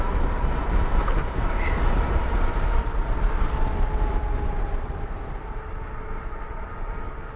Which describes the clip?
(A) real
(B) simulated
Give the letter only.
A